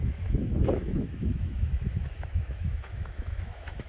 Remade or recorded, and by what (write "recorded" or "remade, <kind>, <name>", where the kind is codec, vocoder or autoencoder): remade, autoencoder, DAC-VAE